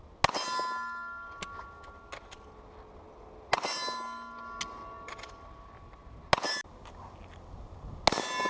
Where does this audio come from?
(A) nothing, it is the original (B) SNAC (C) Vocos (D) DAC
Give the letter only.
A